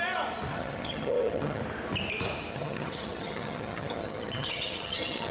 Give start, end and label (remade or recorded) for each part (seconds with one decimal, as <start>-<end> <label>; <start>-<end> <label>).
0.0-0.5 recorded; 0.5-1.6 remade; 1.6-2.5 recorded; 2.5-5.3 remade